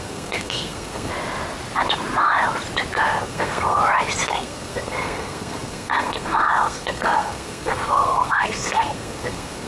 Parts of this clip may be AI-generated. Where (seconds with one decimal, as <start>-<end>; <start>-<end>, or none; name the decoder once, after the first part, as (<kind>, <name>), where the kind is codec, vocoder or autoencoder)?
0.0-1.1 (codec, SNAC); 3.2-3.8; 4.3-9.7